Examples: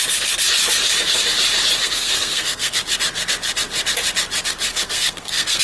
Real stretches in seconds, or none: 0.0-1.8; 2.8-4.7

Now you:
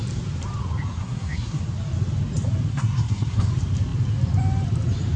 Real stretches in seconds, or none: 0.0-1.0; 1.6-2.7; 3.5-5.2

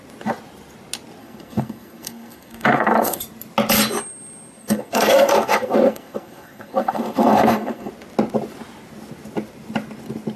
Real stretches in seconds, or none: 0.0-1.2; 3.2-4.6; 7.9-10.4

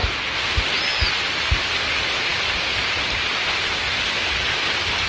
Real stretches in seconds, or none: 0.0-5.1

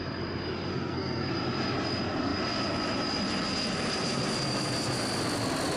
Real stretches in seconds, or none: 0.0-0.7; 1.3-5.8

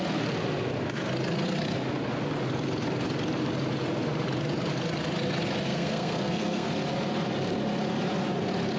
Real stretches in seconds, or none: 0.0-5.7; 6.7-8.8